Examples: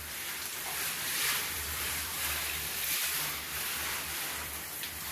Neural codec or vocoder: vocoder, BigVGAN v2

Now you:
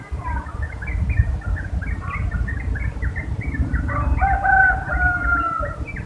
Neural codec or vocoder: vocoder, BigVGAN v2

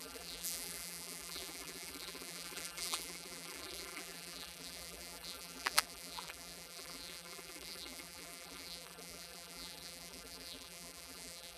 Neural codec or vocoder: vocoder, BigVGAN v2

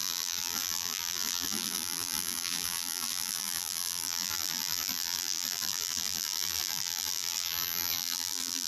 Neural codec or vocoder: vocoder, BigVGAN v2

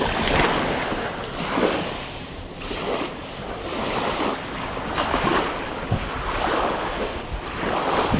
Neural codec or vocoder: none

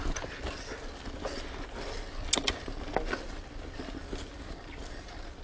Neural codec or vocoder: none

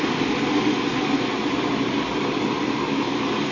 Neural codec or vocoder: none